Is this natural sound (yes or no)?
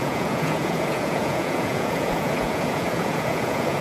no